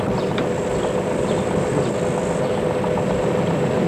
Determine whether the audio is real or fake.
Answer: real